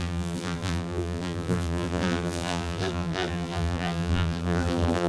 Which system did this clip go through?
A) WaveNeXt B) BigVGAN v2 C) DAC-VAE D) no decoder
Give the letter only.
B